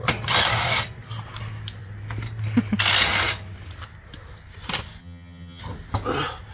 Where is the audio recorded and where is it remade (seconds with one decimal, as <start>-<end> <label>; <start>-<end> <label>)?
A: 0.0-5.0 recorded; 5.0-5.6 remade; 5.6-6.5 recorded